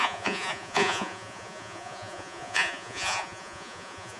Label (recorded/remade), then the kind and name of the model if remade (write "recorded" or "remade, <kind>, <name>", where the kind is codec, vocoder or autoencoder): remade, vocoder, Vocos